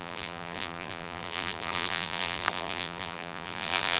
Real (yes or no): no